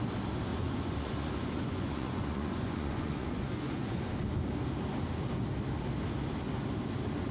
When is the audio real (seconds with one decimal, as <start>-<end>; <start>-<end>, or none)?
0.0-0.5; 4.0-7.3